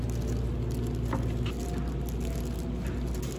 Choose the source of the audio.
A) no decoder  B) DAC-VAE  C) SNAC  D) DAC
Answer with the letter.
A